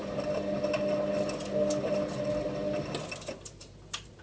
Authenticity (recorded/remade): recorded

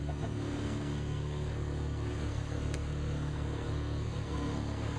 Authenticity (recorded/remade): remade